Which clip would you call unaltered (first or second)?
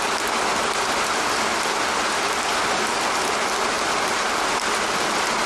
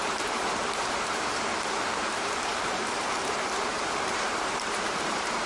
first